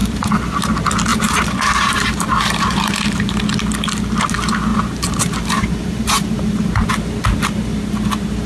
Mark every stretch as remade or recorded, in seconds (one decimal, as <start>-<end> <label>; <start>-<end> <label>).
0.0-0.6 remade; 0.6-1.1 recorded; 1.1-3.4 remade; 3.4-4.7 recorded; 4.7-6.7 remade; 6.7-8.5 recorded